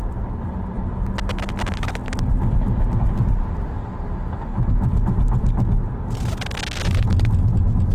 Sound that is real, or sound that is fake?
real